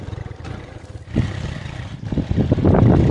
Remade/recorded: recorded